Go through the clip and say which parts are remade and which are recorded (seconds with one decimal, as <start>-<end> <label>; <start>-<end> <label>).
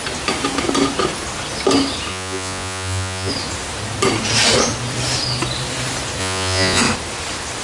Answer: 0.0-2.1 recorded; 2.1-3.3 remade; 3.3-6.2 recorded; 6.2-6.8 remade; 6.8-7.6 recorded